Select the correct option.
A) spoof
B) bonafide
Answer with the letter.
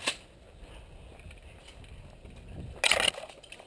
B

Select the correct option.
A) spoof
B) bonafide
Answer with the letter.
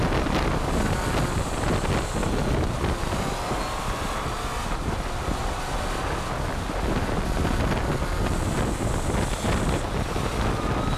B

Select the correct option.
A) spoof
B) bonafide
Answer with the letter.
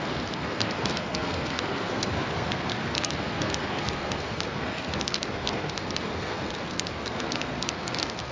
A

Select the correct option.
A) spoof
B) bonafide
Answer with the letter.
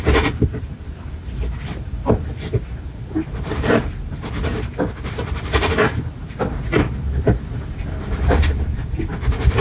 A